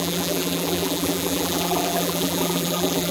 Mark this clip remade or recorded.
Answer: remade